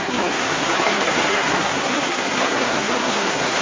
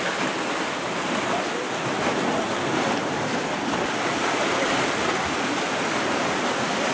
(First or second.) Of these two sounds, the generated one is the first